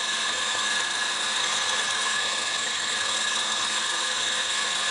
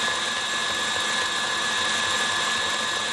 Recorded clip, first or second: second